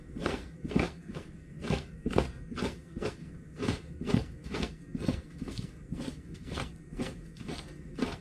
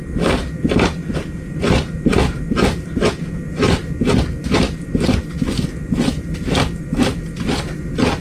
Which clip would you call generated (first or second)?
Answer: first